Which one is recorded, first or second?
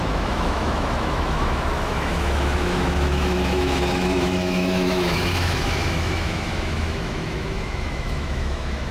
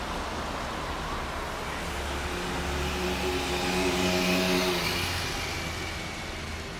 second